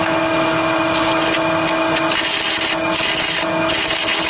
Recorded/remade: recorded